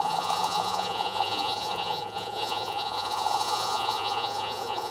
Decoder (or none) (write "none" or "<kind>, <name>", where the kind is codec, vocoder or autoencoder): vocoder, Vocos